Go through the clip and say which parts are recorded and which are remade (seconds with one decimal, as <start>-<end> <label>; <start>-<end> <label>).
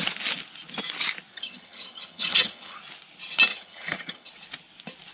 0.0-1.3 recorded; 1.3-2.8 remade; 2.8-3.5 recorded; 3.5-4.3 remade; 4.3-5.1 recorded